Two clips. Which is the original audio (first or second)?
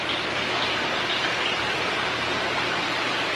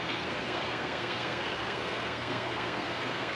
first